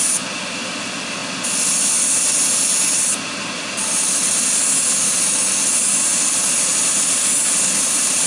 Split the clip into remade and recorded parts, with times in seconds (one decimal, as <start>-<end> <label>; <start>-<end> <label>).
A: 0.0-8.3 recorded